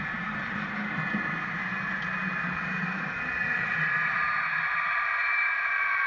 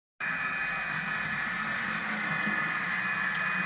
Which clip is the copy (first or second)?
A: first